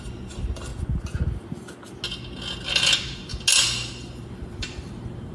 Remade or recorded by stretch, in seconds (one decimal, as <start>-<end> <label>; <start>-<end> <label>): 0.0-0.7 remade; 0.7-3.9 recorded; 3.9-5.3 remade